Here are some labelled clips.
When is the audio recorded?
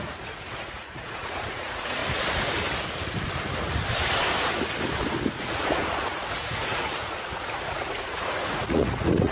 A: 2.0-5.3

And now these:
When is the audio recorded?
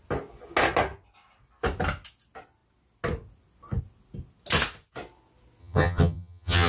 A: 0.0-5.6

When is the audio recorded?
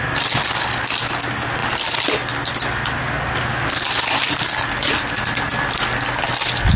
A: none